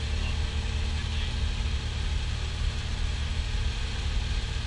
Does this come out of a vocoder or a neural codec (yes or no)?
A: no